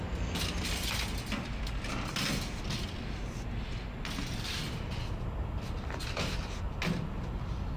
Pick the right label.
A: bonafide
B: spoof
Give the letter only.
A